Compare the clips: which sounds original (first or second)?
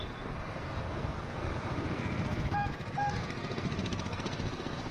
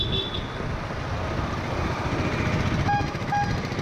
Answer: second